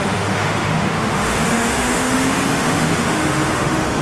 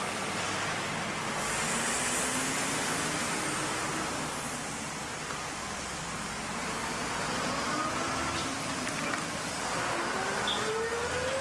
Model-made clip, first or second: first